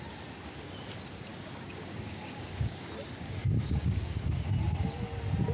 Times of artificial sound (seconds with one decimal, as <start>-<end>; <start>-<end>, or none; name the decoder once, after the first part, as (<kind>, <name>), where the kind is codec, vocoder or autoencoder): 1.3-2.9 (codec, DAC); 3.4-4.5